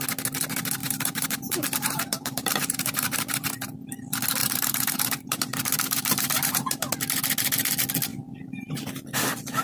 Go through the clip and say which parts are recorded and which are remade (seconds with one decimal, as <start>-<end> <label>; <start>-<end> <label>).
0.0-0.8 recorded; 0.8-3.8 remade; 3.8-4.4 recorded; 4.4-6.9 remade; 6.9-8.1 recorded; 8.1-8.8 remade; 8.8-9.6 recorded